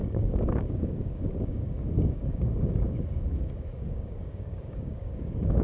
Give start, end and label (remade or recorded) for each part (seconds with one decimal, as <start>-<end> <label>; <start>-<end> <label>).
0.0-5.6 remade